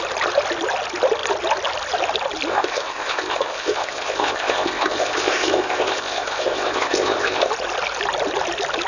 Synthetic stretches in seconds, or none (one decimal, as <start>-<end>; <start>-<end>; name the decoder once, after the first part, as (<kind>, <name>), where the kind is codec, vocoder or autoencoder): 2.5-7.5 (codec, ZipCodec)